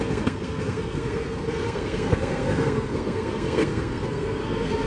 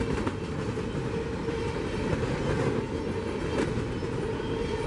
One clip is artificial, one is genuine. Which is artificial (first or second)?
first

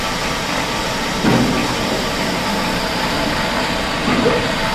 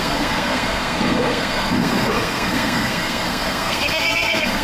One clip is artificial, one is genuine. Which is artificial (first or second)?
second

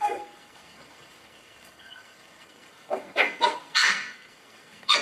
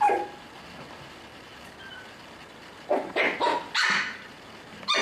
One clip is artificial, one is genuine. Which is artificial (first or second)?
first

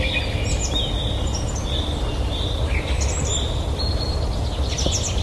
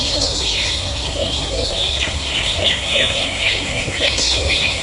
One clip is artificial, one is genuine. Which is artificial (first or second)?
second